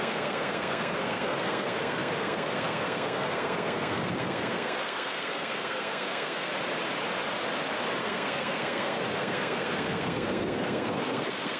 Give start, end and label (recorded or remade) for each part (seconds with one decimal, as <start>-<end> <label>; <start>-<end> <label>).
0.0-6.5 remade; 6.5-8.0 recorded; 8.0-11.6 remade